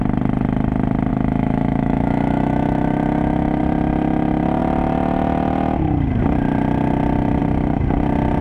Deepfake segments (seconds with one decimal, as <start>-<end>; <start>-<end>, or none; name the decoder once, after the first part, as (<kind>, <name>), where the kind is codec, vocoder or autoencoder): 1.1-3.6 (autoencoder, DAC-VAE)